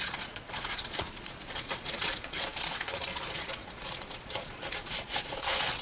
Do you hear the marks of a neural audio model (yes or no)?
yes